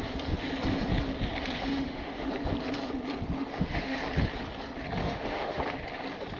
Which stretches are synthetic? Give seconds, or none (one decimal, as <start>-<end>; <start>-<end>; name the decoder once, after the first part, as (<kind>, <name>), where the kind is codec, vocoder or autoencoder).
1.7-2.3 (autoencoder, DAC-VAE); 3.5-4.0; 5.0-5.6